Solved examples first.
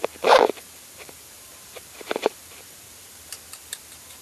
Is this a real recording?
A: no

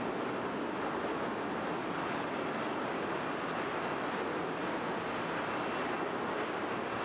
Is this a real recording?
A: yes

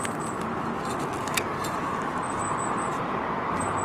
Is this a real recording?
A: yes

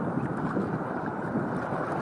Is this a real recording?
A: no